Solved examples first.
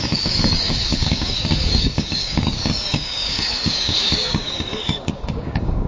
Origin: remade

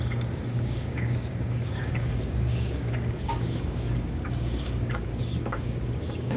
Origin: remade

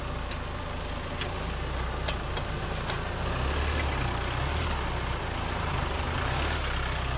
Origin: recorded